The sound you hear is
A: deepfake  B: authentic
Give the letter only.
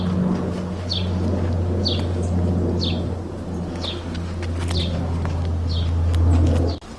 B